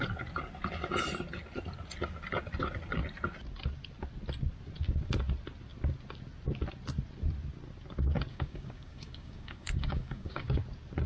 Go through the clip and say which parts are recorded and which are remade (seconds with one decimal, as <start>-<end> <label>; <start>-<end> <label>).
0.0-8.3 recorded; 8.3-10.6 remade; 10.6-11.1 recorded

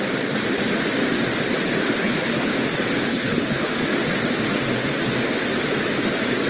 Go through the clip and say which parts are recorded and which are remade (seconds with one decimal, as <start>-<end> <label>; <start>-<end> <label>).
0.0-2.0 recorded; 2.0-2.5 remade; 2.5-3.1 recorded; 3.1-3.7 remade; 3.7-6.5 recorded

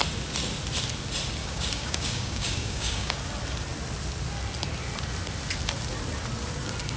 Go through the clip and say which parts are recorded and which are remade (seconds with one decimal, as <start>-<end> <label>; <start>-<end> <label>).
0.0-1.4 recorded; 1.4-3.2 remade; 3.2-7.0 recorded

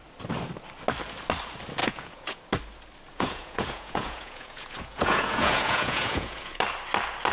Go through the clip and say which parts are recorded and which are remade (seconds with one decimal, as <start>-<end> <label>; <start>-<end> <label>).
0.0-1.8 recorded; 1.8-2.4 remade; 2.4-3.1 recorded; 3.1-6.6 remade; 6.6-7.3 recorded

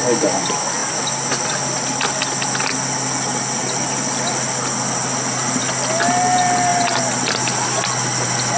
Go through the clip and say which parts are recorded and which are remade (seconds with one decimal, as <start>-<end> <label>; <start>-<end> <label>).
0.0-8.6 recorded

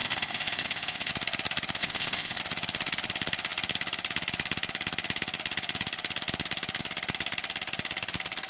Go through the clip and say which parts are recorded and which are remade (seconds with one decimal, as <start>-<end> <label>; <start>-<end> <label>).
0.0-1.1 remade; 1.1-1.8 recorded; 1.8-2.4 remade; 2.4-8.5 recorded